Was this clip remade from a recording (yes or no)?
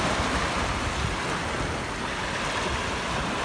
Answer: no